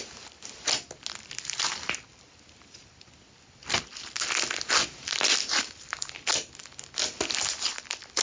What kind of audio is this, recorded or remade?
recorded